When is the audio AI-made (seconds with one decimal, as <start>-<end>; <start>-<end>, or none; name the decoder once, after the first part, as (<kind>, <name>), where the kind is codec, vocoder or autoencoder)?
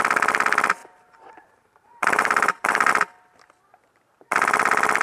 0.8-2.9 (vocoder, BigVGAN v2)